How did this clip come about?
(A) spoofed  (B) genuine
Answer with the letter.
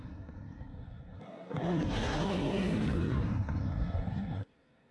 A